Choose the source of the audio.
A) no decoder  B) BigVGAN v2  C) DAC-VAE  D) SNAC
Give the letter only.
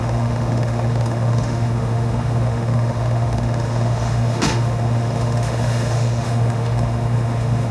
C